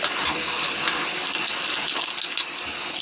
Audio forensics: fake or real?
real